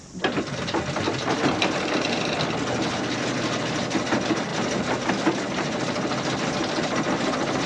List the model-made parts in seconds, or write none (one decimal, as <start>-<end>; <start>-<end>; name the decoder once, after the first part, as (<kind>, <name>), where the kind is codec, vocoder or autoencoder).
none